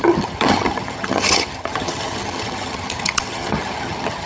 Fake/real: fake